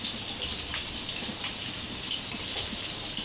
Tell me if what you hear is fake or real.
real